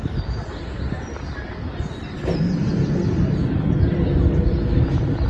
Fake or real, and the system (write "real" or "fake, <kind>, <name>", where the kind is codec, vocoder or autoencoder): real